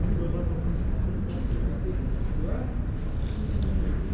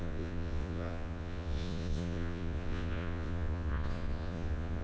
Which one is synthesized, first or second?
second